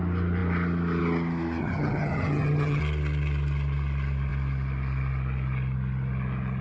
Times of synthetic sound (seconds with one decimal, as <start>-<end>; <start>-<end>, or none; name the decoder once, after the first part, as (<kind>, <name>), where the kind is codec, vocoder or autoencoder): 1.6-2.8 (vocoder, HiFi-GAN)